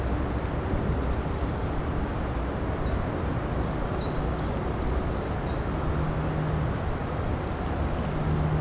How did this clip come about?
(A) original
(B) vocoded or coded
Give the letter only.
A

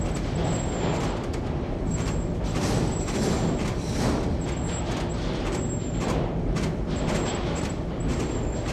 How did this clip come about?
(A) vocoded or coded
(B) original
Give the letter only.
B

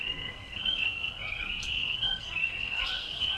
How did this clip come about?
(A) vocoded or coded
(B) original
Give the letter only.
A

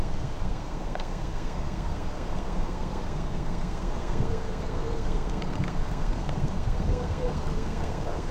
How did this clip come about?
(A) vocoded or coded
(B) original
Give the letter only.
A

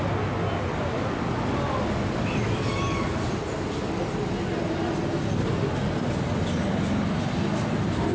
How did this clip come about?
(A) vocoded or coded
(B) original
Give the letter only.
B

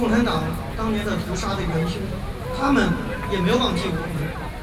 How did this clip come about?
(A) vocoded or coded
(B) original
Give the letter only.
B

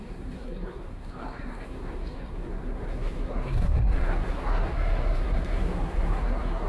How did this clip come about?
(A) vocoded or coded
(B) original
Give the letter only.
A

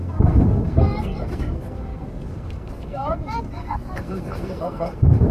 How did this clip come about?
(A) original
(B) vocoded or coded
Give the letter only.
B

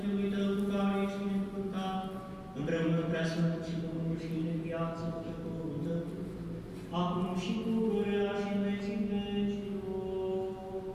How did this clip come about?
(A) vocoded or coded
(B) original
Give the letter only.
B